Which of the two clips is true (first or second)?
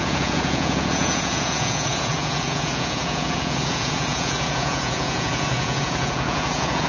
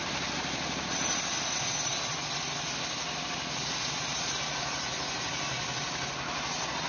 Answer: second